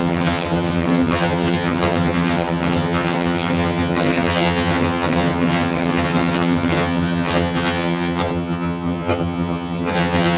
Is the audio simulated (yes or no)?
yes